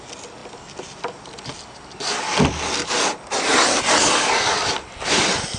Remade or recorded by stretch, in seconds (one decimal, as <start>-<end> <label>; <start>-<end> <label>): 0.0-5.6 recorded